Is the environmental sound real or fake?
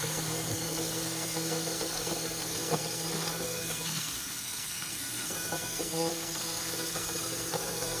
fake